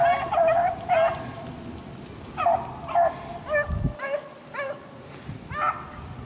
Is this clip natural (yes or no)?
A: yes